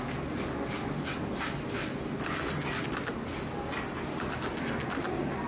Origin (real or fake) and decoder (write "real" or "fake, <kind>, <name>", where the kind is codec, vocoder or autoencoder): real